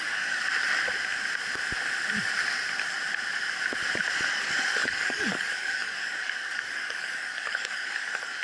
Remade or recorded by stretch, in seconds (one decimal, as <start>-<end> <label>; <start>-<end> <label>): 0.0-0.4 remade; 0.4-4.3 recorded; 4.3-8.4 remade